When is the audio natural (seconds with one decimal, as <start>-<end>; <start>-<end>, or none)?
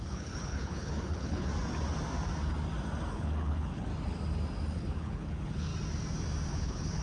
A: 1.5-3.1; 3.9-4.7; 5.7-6.5